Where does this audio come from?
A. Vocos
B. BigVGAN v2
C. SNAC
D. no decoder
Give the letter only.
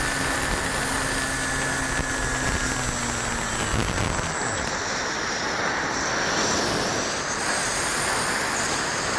D